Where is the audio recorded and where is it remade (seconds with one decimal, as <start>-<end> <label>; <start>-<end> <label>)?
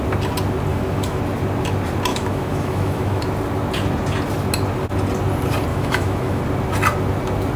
0.0-0.7 recorded; 0.7-1.2 remade; 1.2-2.1 recorded; 2.1-3.2 remade; 3.2-5.7 recorded; 5.7-6.4 remade; 6.4-7.6 recorded